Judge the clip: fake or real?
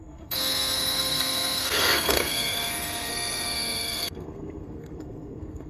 fake